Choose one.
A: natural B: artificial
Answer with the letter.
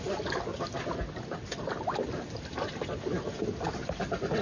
A